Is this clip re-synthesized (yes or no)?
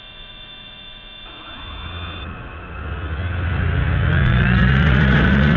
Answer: yes